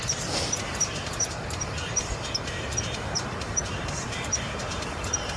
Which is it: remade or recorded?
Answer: remade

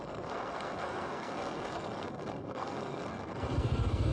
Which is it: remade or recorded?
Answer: remade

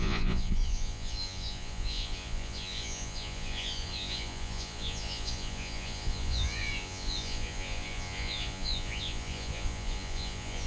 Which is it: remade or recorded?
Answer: remade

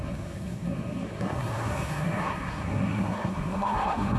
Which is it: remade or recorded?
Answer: remade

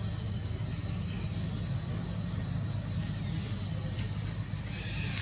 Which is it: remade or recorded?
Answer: recorded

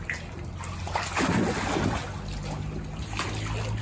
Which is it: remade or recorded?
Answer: recorded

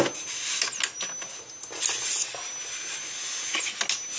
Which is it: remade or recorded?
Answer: recorded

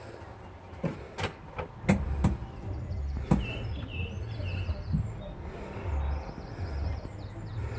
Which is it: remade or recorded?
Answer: recorded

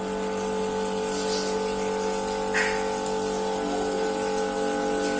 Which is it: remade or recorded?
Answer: recorded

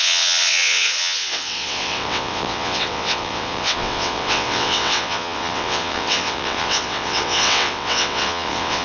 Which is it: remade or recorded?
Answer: remade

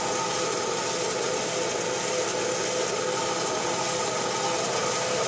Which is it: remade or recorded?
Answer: recorded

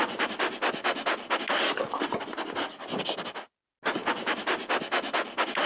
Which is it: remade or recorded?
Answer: recorded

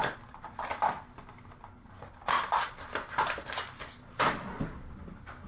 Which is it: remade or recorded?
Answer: recorded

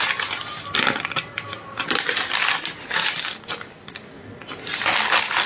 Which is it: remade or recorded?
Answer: recorded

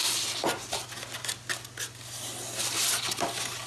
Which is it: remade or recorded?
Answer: recorded